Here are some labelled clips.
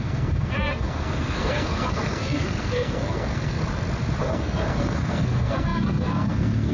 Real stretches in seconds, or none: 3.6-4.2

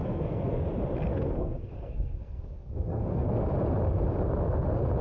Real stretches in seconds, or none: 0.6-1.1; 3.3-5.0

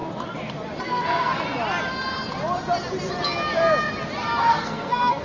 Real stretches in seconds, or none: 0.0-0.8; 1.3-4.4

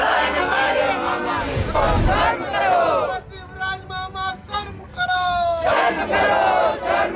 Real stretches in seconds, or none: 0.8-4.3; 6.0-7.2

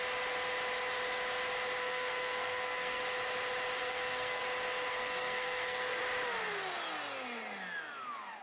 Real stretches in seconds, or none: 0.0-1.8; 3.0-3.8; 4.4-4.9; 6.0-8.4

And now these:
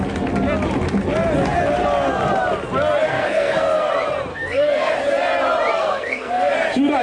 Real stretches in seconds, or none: 0.0-3.1; 3.9-4.3; 4.9-5.7; 6.5-7.0